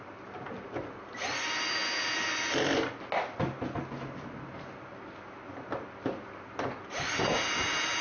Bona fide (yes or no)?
yes